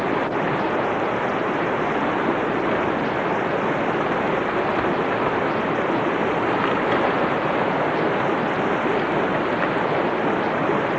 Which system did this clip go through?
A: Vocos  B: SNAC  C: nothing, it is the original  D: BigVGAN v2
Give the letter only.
C